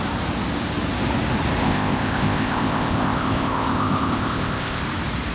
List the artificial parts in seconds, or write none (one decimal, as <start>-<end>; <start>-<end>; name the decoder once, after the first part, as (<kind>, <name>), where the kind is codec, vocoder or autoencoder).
1.6-4.8 (codec, ZipCodec)